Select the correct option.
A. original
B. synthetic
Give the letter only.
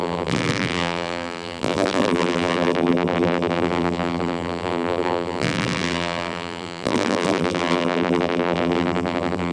B